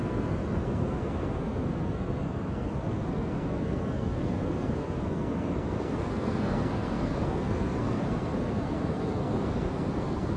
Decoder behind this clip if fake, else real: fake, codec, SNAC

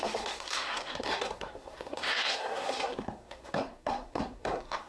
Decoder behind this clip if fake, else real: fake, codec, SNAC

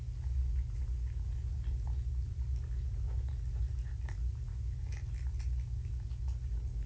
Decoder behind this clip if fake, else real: real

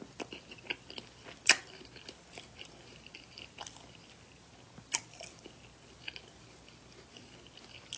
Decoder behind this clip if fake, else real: real